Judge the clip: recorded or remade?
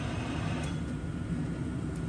recorded